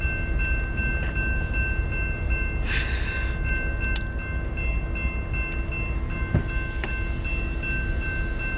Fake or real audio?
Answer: real